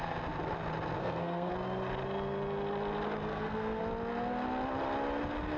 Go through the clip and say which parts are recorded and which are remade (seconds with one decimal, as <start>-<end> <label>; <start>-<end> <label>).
0.0-1.0 recorded; 1.0-1.5 remade; 1.5-3.3 recorded; 3.3-3.8 remade; 3.8-5.6 recorded